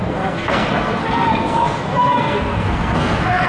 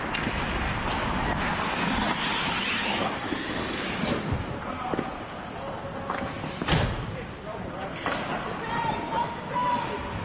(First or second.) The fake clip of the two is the first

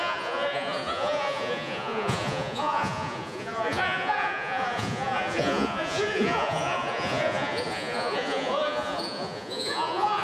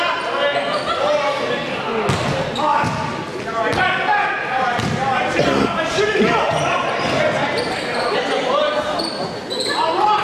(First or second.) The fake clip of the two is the first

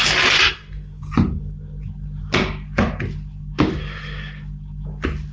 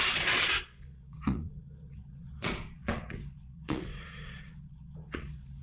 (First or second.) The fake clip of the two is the second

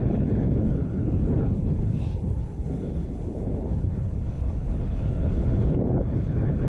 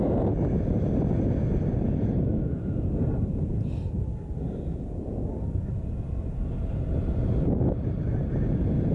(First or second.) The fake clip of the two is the first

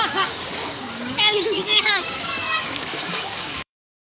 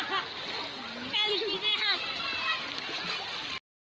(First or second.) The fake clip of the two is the first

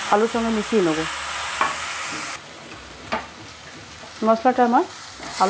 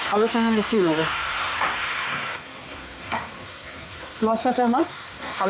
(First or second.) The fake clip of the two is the second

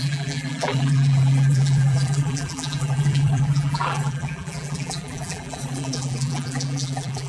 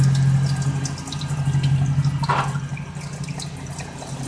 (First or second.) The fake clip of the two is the first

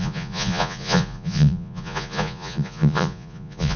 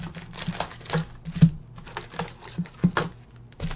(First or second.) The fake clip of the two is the first